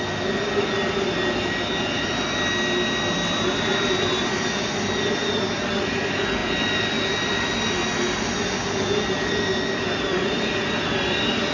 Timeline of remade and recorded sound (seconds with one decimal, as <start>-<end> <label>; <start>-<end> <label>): 0.0-11.5 recorded

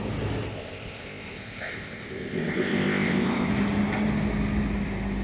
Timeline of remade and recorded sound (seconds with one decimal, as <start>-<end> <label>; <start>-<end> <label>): 0.0-0.5 recorded; 0.5-3.5 remade; 3.5-5.2 recorded